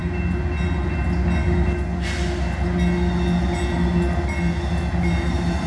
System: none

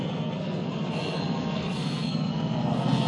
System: codec, SNAC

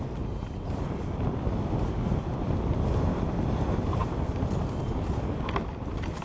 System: none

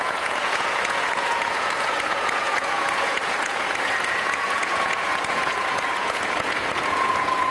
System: vocoder, Vocos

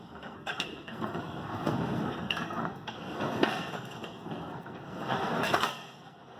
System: codec, SNAC